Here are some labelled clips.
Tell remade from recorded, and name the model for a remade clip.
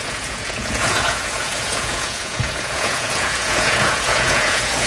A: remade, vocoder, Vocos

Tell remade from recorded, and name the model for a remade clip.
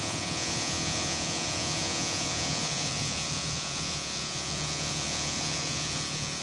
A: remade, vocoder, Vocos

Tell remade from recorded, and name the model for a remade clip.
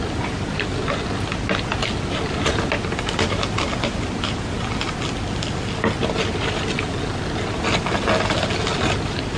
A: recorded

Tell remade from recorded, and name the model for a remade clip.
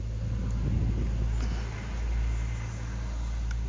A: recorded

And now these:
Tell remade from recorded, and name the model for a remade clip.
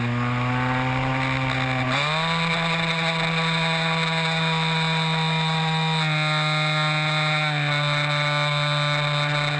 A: recorded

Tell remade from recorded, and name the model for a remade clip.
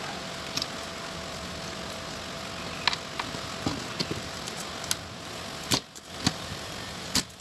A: recorded